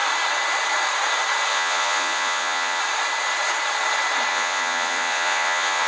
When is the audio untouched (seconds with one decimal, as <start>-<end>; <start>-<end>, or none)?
0.0-1.5; 2.8-4.3

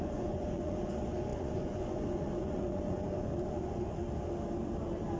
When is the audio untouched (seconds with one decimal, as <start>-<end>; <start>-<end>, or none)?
4.0-5.2

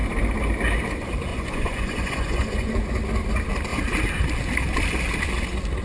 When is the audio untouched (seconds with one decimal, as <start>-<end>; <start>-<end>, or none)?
0.0-1.3; 2.7-5.8

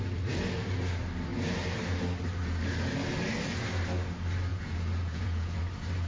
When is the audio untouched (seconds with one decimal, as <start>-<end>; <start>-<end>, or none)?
0.0-4.5; 5.6-6.1

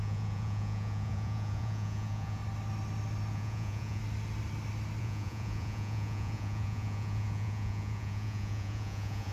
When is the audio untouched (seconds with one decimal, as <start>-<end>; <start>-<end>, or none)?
2.4-3.3; 4.0-5.0

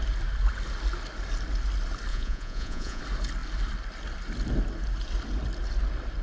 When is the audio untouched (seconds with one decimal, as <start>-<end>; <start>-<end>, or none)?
0.0-2.1; 3.0-6.2

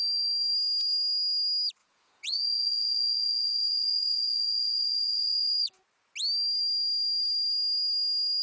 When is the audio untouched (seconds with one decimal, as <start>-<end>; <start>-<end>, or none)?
0.0-1.8; 5.8-8.4